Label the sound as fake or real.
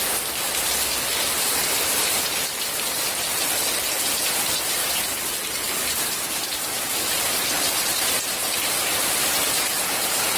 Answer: fake